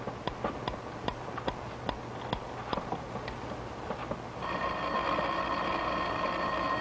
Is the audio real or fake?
real